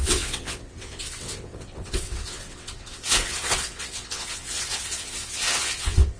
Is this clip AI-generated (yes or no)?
yes